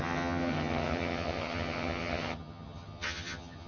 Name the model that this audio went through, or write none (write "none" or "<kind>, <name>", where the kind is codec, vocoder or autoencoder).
vocoder, HiFi-GAN